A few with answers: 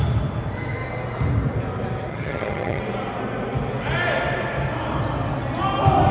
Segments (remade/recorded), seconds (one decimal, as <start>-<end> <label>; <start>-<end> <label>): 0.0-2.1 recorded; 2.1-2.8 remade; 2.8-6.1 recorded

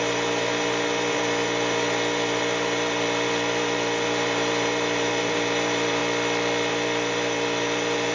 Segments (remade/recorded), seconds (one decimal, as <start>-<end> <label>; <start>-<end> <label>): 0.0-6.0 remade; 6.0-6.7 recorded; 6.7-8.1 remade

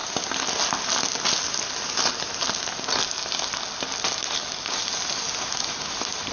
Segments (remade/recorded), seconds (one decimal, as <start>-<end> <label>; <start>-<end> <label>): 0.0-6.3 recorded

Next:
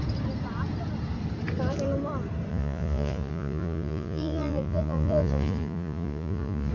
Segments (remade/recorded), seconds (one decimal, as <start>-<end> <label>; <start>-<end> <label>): 0.0-2.5 recorded; 2.5-6.7 remade

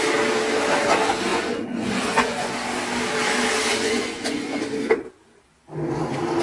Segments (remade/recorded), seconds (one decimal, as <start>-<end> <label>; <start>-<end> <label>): 0.0-1.3 recorded; 1.3-2.5 remade; 2.5-3.7 recorded; 3.7-4.6 remade; 4.6-6.4 recorded

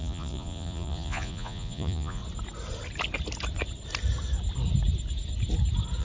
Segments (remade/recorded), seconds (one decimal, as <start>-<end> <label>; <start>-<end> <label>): 0.0-2.2 remade; 2.2-6.0 recorded